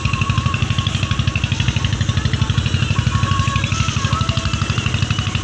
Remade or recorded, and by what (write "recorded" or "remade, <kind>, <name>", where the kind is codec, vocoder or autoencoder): recorded